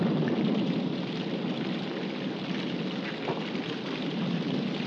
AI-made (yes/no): yes